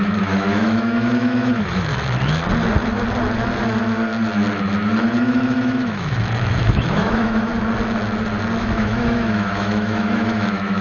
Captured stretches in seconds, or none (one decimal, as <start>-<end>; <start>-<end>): 1.9-5.2; 7.5-8.6